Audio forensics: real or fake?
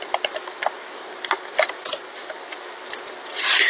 real